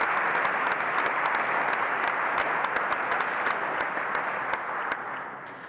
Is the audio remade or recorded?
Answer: recorded